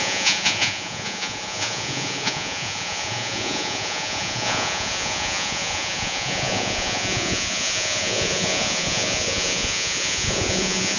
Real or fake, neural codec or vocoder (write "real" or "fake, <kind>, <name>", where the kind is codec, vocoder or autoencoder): fake, vocoder, Vocos